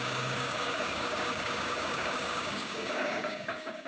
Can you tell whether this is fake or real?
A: fake